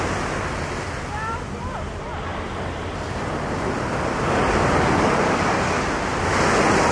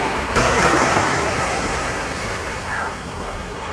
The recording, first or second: first